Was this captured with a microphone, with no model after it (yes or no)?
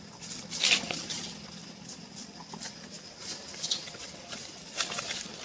yes